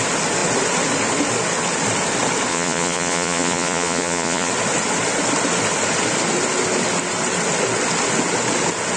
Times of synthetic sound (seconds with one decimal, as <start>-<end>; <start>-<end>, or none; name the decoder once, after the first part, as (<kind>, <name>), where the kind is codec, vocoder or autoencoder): 2.5-4.5 (vocoder, Vocos)